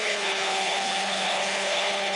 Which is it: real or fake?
fake